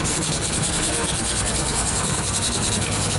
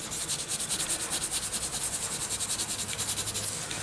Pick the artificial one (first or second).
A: first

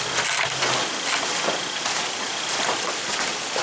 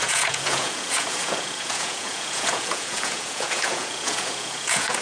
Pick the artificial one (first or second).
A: second